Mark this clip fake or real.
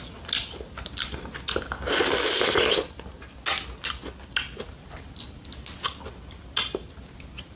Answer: real